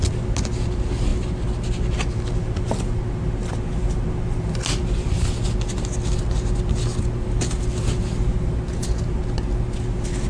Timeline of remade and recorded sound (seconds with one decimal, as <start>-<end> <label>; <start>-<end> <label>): 0.0-10.3 recorded